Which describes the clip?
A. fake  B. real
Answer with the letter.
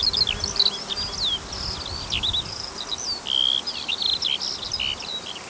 B